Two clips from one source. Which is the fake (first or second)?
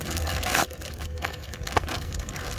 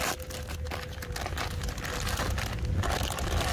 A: first